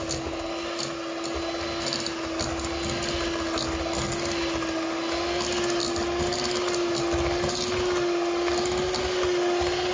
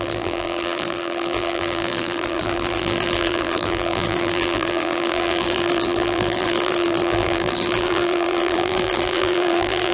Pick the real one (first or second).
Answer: first